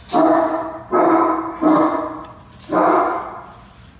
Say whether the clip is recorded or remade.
recorded